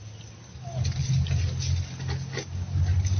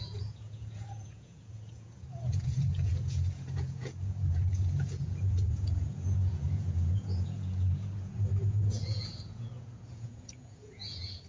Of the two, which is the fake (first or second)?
second